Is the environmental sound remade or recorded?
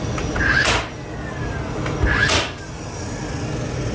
recorded